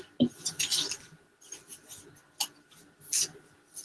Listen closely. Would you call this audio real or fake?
real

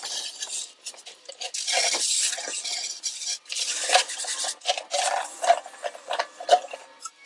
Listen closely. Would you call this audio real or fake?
real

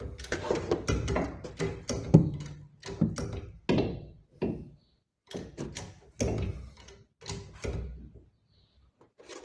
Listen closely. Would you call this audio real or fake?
real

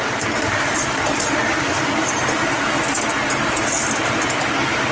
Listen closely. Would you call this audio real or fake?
real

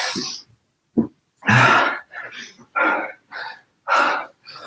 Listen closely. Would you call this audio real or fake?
real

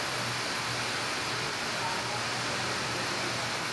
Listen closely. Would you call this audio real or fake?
real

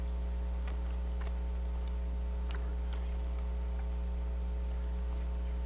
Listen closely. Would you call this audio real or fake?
real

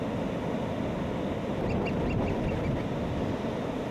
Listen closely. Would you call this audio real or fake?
real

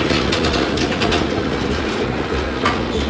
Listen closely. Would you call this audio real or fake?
fake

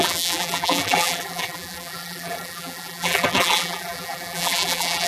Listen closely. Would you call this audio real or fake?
fake